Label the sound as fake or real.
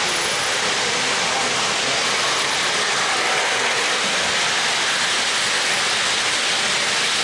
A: real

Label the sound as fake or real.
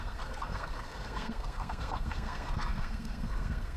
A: fake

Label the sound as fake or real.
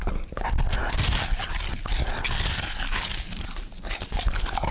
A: real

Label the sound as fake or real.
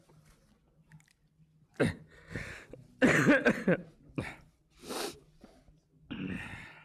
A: real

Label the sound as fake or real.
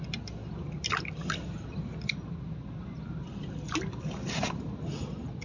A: real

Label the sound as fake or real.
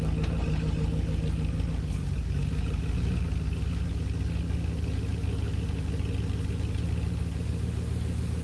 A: real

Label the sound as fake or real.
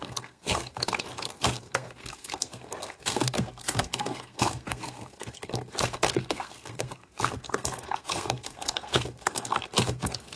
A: fake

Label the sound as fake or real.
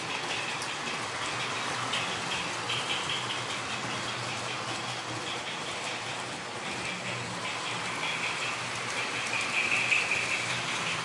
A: real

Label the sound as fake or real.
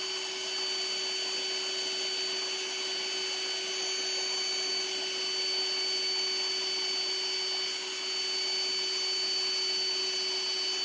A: real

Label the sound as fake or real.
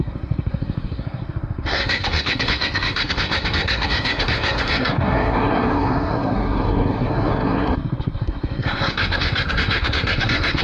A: fake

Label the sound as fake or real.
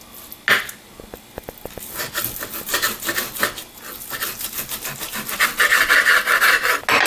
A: real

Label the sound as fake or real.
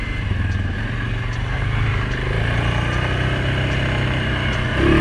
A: real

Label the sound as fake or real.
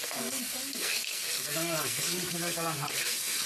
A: fake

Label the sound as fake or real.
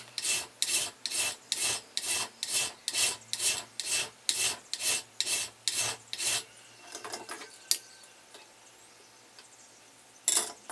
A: real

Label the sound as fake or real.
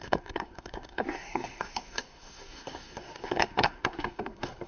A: fake